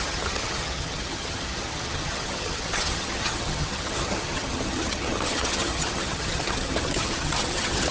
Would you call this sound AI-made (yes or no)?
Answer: yes